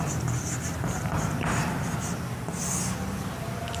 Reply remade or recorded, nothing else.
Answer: recorded